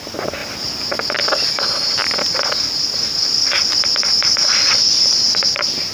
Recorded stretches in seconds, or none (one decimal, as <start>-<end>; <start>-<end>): 0.0-5.9